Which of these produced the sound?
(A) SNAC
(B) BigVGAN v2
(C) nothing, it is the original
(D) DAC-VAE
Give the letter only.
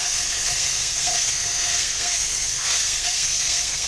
A